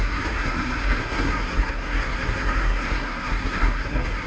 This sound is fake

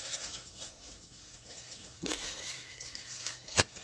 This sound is fake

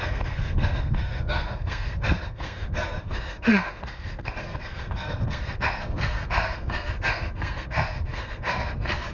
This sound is fake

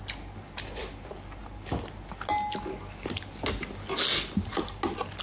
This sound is real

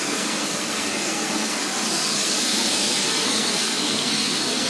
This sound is fake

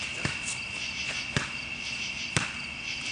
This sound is real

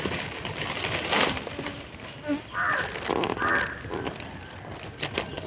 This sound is real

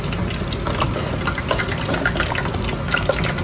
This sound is real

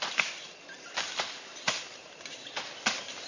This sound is real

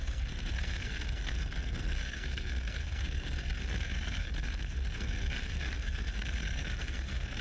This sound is fake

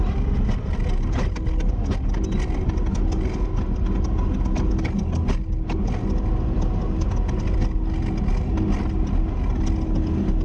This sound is real